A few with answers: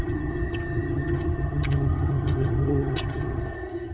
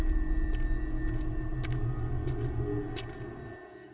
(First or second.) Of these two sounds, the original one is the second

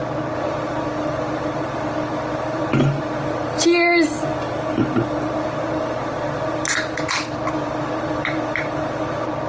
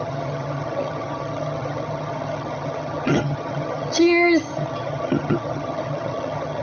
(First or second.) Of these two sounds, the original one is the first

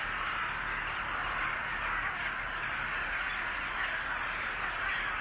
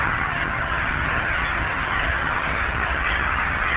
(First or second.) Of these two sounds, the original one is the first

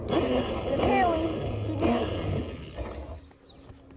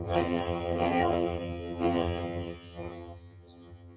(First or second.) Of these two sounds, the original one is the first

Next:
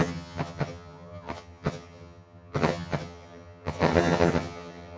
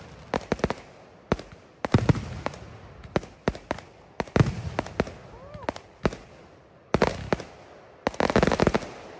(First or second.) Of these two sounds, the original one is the second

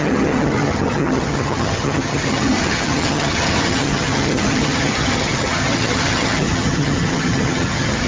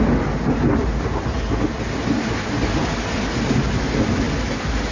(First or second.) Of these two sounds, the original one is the second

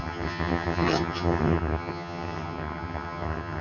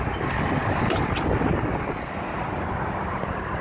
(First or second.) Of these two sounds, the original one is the second